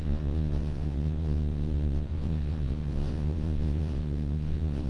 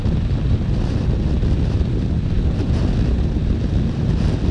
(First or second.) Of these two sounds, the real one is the second